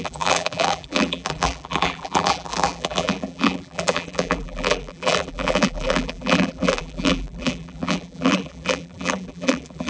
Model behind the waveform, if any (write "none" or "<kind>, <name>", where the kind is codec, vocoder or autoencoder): vocoder, BigVGAN v2